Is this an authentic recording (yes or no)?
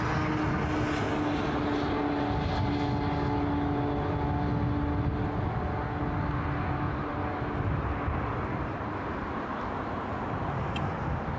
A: yes